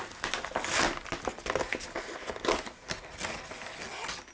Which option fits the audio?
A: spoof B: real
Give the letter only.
B